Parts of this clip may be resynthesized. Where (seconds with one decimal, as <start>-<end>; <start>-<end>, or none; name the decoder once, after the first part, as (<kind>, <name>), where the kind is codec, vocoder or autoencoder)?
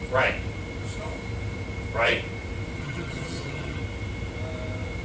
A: 2.8-3.8 (vocoder, HiFi-GAN)